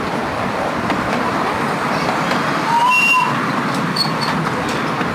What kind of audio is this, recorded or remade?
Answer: recorded